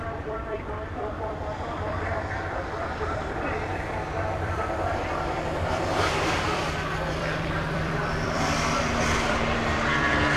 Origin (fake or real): fake